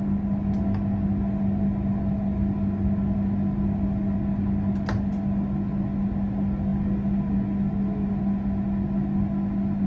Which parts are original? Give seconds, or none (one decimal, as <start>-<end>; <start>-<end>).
0.0-9.9